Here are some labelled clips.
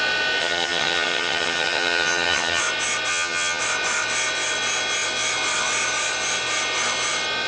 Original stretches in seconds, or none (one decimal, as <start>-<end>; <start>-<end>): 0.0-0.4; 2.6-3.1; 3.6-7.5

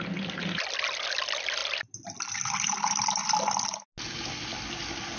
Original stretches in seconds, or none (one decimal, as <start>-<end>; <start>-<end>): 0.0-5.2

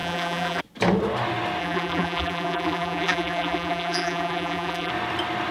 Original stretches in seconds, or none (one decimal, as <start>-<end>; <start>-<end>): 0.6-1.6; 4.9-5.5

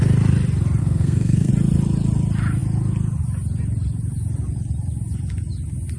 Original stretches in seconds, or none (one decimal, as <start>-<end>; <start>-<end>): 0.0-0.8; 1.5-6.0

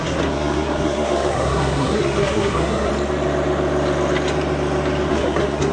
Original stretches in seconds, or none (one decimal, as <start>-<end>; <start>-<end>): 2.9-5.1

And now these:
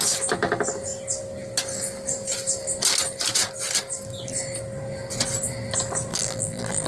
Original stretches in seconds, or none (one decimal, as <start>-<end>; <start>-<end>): 0.0-6.1

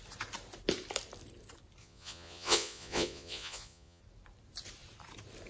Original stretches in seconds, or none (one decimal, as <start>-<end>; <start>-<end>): 0.0-1.8; 4.0-5.5